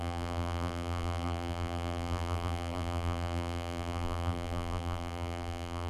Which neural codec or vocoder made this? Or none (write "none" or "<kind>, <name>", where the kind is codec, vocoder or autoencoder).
vocoder, BigVGAN v2